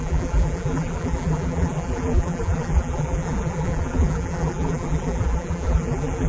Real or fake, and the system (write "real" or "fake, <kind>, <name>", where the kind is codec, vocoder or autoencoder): fake, vocoder, BigVGAN v2